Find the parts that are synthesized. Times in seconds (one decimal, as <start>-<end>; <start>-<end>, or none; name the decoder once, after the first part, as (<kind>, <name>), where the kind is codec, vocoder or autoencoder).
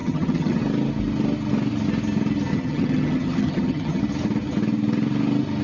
0.0-0.6 (vocoder, HiFi-GAN); 2.5-4.0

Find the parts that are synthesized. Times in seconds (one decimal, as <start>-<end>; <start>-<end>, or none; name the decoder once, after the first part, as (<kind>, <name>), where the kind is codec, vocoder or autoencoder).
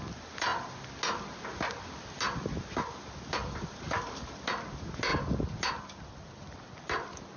none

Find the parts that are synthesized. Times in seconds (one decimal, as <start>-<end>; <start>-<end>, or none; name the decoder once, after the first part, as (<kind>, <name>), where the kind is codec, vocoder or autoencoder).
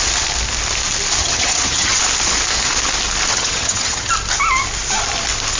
1.2-2.0 (vocoder, HiFi-GAN); 3.3-4.1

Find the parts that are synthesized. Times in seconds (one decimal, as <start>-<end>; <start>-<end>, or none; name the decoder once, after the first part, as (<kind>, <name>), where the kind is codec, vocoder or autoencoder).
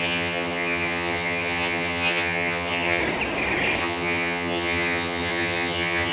0.0-3.0 (vocoder, HiFi-GAN); 3.8-6.1